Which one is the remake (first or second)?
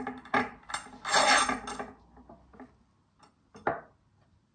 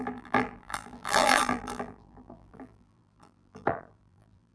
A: second